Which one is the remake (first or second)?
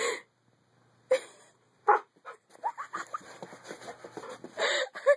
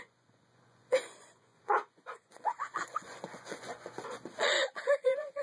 second